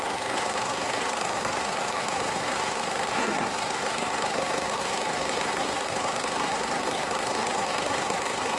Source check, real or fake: fake